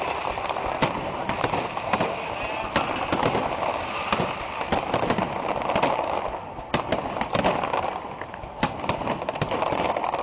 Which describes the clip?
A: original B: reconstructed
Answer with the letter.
A